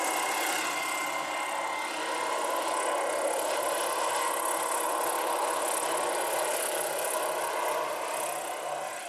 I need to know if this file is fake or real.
real